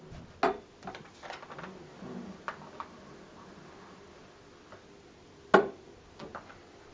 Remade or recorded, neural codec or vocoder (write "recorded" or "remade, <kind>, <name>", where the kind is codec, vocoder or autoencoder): recorded